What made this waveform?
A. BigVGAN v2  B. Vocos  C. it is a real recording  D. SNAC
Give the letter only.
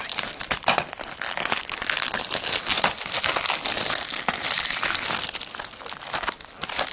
C